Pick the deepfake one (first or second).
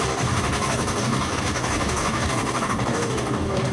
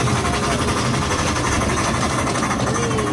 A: first